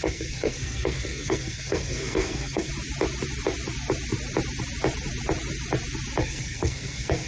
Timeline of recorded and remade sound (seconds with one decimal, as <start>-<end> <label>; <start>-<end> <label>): 0.0-2.7 remade; 2.7-6.2 recorded; 6.2-7.3 remade